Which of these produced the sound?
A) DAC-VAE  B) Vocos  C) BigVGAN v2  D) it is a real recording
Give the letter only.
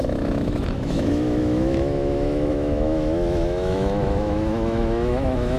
A